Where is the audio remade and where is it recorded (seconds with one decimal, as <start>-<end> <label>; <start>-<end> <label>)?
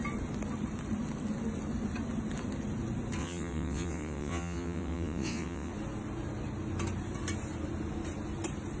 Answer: 0.0-3.2 recorded; 3.2-5.7 remade; 5.7-8.8 recorded